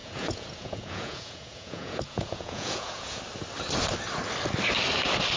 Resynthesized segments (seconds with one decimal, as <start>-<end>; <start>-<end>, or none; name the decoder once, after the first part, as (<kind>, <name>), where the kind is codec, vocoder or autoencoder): 0.0-3.2 (vocoder, Vocos)